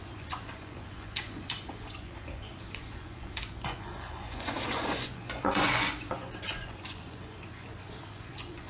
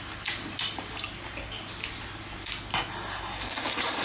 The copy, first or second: first